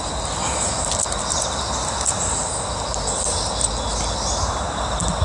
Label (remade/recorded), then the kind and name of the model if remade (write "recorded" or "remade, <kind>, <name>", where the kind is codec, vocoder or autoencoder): recorded